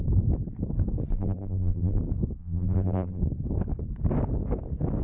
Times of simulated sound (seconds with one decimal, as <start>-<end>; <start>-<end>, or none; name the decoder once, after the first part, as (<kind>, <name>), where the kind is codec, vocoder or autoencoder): 1.1-2.0 (vocoder, BigVGAN v2); 2.4-3.2